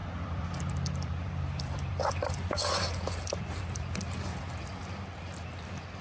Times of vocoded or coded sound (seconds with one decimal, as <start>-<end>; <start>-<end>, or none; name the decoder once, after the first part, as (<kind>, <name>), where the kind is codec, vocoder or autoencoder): 0.0-3.6 (vocoder, BigVGAN v2)